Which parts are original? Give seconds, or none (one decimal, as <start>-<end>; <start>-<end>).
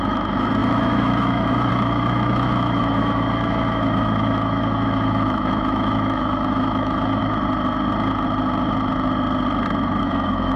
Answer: 7.2-10.0